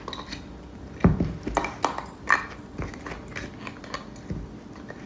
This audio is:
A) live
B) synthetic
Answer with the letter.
A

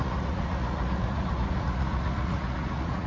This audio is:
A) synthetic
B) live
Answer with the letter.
A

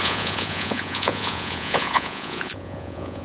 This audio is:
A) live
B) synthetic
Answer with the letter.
B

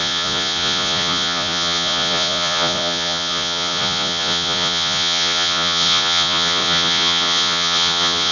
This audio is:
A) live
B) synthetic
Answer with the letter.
B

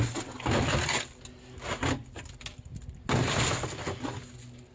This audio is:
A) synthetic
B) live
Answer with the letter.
B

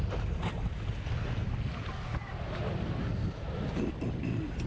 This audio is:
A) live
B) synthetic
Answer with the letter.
A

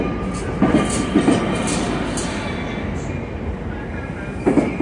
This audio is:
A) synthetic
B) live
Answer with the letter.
B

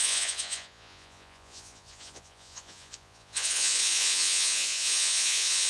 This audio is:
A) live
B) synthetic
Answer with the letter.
B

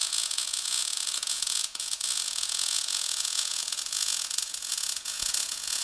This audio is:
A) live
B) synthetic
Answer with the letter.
B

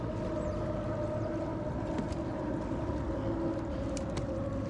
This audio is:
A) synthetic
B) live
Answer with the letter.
B